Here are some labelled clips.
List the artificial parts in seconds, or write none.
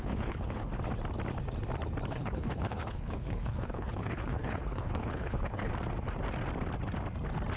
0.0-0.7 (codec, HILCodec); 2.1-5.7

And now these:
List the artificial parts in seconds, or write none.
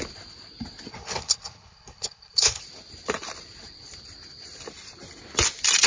0.9-2.6 (codec, HILCodec)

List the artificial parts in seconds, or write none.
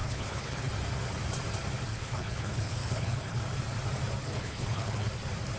0.0-0.7 (codec, HILCodec); 1.9-3.4; 4.2-5.1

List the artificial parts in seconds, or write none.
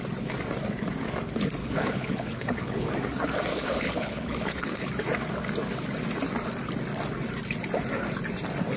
1.6-2.9 (codec, HILCodec); 3.5-4.9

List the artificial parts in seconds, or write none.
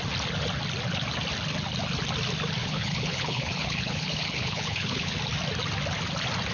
2.6-5.2 (codec, HILCodec)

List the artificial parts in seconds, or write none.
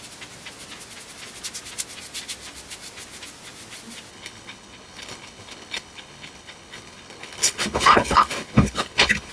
4.1-9.3 (codec, HILCodec)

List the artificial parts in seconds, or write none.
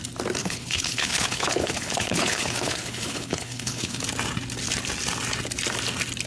0.4-4.0 (codec, HILCodec)